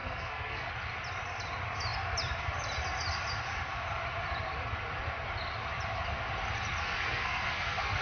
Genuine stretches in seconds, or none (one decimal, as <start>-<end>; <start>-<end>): 0.7-6.8

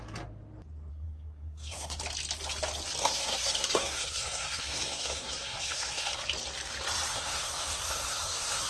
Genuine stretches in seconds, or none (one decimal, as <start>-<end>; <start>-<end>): 0.0-0.9; 2.0-3.0; 6.2-7.1